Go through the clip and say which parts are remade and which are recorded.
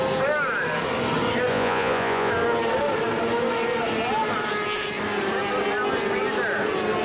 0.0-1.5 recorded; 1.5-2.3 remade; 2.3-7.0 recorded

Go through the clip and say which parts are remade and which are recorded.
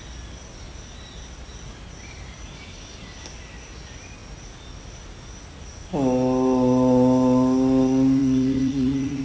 0.0-8.2 recorded; 8.2-9.2 remade